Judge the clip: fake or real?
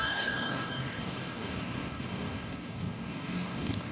fake